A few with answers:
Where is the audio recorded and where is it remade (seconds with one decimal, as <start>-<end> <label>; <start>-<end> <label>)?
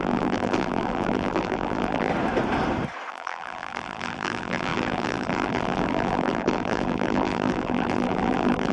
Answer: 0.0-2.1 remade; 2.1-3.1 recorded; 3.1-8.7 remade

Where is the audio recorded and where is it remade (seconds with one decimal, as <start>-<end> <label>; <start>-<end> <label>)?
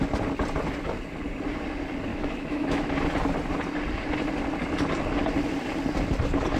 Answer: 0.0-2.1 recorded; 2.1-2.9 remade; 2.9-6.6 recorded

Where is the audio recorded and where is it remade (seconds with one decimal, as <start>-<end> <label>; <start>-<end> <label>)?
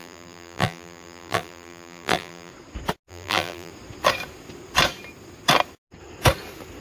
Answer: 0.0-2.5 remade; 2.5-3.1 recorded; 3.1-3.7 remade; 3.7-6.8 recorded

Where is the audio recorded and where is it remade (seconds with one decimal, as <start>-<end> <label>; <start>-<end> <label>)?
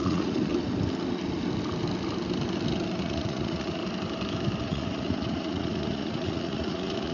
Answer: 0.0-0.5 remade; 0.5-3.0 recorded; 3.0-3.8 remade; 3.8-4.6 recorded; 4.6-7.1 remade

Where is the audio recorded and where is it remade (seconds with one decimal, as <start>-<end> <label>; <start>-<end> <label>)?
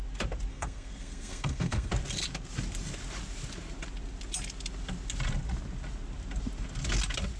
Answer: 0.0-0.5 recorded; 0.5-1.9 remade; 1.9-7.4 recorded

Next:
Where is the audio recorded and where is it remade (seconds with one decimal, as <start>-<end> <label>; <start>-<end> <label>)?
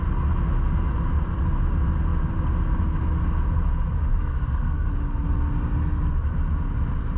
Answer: 0.0-4.1 recorded; 4.1-4.9 remade; 4.9-7.2 recorded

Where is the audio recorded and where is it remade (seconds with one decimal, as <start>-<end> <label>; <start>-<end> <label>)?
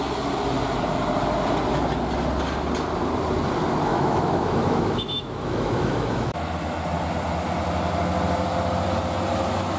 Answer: 0.0-3.9 recorded; 3.9-6.5 remade; 6.5-9.8 recorded